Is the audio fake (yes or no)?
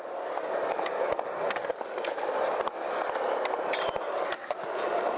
no